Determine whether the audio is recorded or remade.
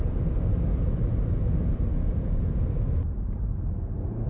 remade